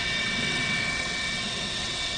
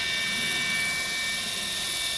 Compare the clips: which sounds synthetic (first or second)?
first